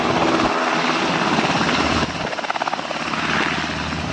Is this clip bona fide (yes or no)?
yes